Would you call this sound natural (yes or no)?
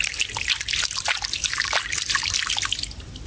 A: yes